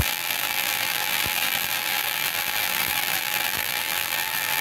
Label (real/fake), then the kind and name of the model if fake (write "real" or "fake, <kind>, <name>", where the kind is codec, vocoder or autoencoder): fake, vocoder, BigVGAN v2